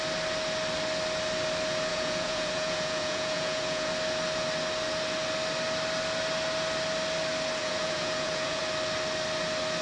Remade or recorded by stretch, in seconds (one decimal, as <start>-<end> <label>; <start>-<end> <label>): 0.0-1.9 recorded; 1.9-3.9 remade; 3.9-7.6 recorded; 7.6-8.6 remade; 8.6-9.8 recorded